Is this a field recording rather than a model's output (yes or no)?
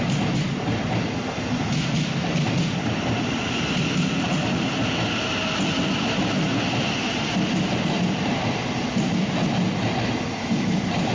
yes